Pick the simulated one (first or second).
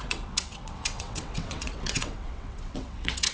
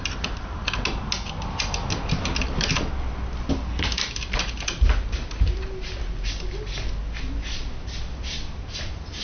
first